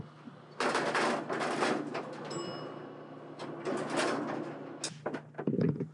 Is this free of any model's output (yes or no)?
yes